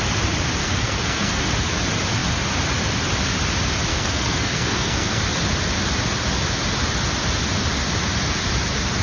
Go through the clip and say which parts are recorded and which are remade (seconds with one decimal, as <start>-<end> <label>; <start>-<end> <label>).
0.0-0.6 recorded; 0.6-1.4 remade; 1.4-3.9 recorded; 3.9-5.2 remade; 5.2-9.0 recorded